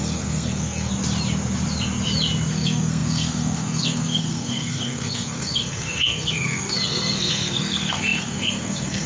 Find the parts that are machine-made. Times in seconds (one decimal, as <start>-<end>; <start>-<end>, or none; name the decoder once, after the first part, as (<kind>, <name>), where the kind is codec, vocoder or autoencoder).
0.0-0.9 (codec, SNAC); 2.5-9.1